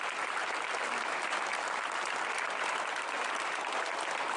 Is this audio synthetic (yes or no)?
no